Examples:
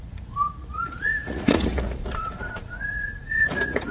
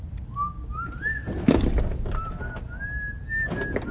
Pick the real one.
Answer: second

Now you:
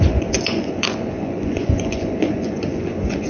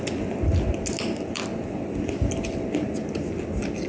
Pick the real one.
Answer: second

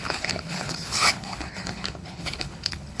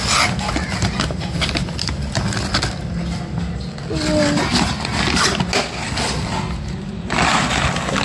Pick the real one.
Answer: second